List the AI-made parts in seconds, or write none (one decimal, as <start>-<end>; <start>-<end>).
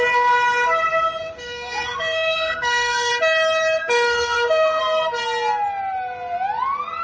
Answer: 1.4-3.1; 3.8-4.8